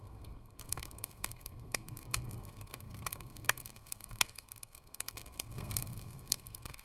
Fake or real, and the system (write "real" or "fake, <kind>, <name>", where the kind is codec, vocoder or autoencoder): fake, codec, SNAC